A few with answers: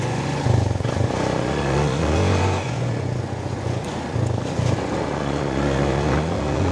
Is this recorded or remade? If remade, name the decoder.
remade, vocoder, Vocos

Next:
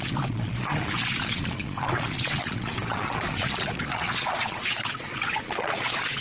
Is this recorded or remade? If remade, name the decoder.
remade, vocoder, Vocos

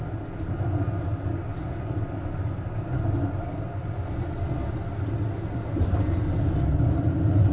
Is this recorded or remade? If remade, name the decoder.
recorded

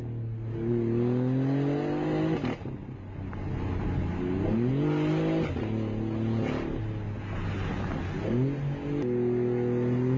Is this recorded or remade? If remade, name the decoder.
recorded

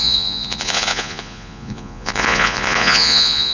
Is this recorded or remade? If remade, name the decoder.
remade, vocoder, Vocos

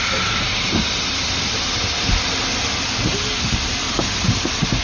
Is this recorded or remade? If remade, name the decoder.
recorded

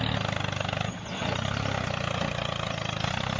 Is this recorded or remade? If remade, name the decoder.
recorded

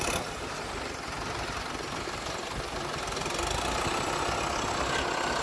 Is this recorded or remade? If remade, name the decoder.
recorded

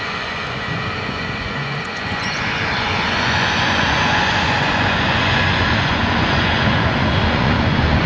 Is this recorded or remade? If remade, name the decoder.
remade, vocoder, Vocos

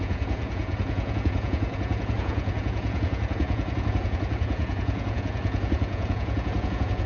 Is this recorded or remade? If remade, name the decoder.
remade, vocoder, Vocos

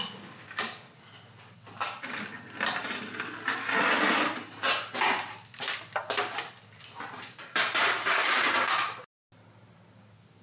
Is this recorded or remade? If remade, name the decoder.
recorded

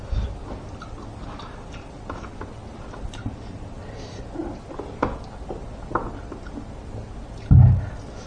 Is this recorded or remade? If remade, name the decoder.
recorded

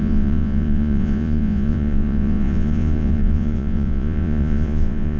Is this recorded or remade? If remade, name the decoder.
remade, vocoder, Vocos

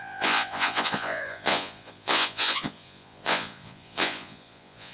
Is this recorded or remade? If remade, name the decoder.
remade, vocoder, Vocos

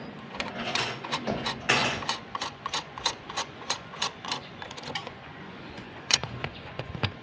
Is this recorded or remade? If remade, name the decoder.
remade, vocoder, Vocos